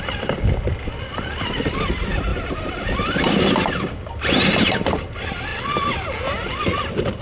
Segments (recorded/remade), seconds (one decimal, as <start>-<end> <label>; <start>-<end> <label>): 0.0-2.3 recorded; 2.3-3.2 remade; 3.2-7.2 recorded

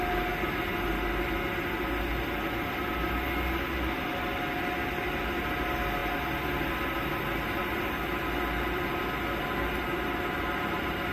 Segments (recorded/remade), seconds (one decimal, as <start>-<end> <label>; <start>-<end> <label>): 0.0-11.1 recorded

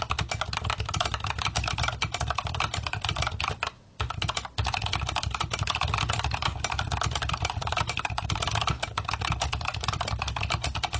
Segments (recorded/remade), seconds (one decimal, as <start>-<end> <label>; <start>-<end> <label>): 0.0-7.6 recorded; 7.6-8.4 remade; 8.4-11.0 recorded

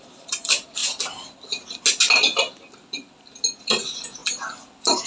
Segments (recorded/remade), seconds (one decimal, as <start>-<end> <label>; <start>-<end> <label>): 0.0-0.8 remade; 0.8-3.6 recorded; 3.6-4.2 remade; 4.2-5.1 recorded